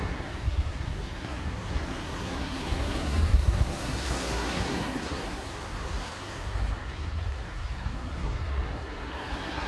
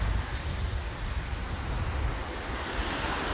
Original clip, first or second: second